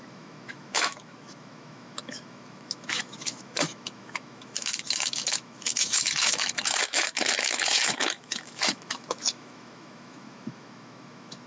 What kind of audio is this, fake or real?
fake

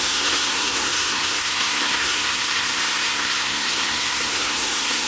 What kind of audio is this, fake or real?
fake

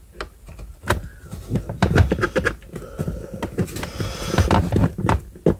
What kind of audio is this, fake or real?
real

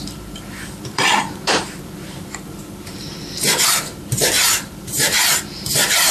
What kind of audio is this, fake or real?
fake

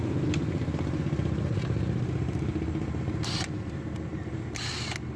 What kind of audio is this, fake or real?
real